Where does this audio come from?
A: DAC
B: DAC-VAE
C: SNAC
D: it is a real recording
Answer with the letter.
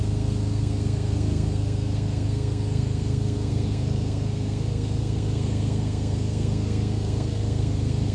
C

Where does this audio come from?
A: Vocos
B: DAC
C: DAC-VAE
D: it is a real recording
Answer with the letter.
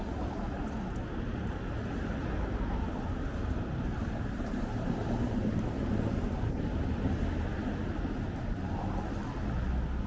D